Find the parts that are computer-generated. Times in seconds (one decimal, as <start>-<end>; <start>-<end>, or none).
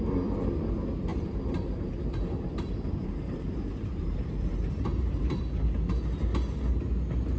1.1-5.4